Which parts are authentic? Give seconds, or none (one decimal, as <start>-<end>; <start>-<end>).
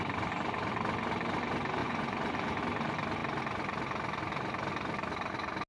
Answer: 0.0-1.8; 2.6-5.7